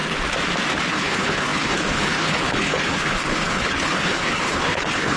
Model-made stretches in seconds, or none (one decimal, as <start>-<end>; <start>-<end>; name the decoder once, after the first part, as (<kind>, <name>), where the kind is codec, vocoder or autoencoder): 0.9-5.2 (codec, HILCodec)